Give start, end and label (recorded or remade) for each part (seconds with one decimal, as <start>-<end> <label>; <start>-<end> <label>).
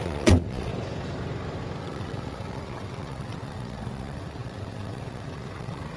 0.0-0.7 remade; 0.7-1.8 recorded; 1.8-6.0 remade